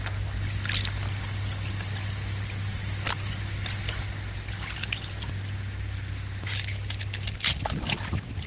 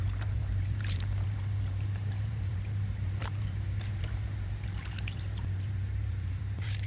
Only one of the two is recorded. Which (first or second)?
first